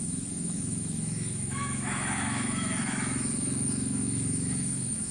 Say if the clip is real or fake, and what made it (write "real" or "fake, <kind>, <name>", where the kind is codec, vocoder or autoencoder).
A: fake, autoencoder, DAC-VAE